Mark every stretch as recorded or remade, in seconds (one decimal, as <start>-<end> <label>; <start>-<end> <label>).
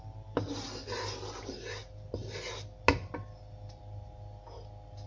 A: 0.0-5.1 recorded